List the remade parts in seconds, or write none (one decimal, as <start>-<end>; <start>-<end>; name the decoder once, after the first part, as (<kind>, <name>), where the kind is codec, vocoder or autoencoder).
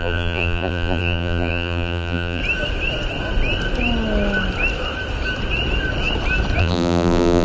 0.0-2.4 (vocoder, BigVGAN v2); 6.6-7.4